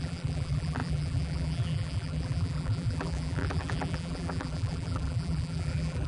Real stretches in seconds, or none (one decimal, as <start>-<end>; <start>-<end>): none